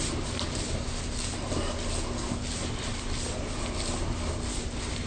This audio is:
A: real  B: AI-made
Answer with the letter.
A